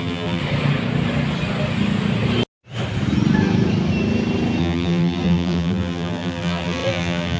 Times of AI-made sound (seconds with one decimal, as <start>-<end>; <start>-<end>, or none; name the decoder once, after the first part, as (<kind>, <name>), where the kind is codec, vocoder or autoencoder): 0.0-0.4 (vocoder, BigVGAN v2); 4.6-7.4